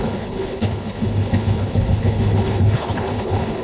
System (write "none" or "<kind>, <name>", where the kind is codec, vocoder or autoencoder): codec, HILCodec